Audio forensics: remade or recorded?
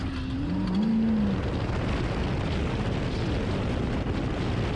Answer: recorded